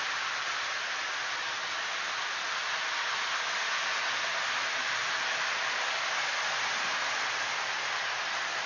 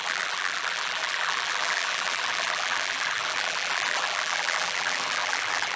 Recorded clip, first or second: first